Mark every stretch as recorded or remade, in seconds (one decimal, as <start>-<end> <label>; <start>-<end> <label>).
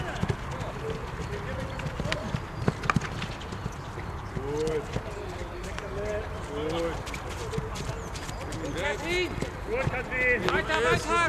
0.0-11.3 recorded